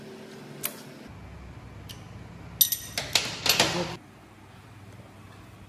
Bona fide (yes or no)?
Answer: yes